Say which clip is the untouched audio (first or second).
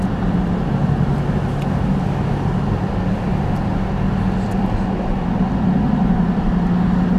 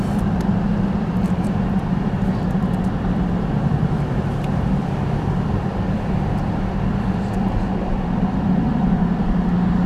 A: first